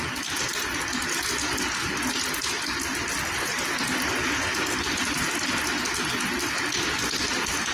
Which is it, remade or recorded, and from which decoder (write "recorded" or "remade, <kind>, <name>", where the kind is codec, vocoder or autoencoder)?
recorded